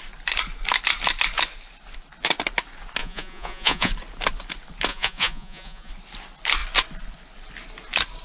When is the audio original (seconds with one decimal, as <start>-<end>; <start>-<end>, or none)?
0.0-3.0; 3.9-4.9; 5.9-8.2